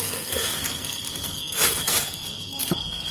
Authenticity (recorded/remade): remade